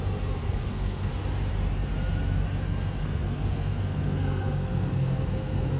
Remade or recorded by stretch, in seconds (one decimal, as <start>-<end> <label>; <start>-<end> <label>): 0.0-0.4 recorded; 0.4-1.1 remade; 1.1-3.0 recorded; 3.0-5.8 remade